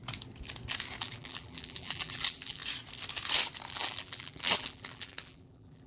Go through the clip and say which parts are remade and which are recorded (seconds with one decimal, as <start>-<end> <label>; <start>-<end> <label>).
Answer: 0.0-1.0 recorded; 1.0-2.6 remade; 2.6-3.7 recorded; 3.7-5.9 remade